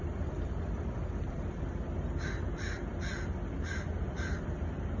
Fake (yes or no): yes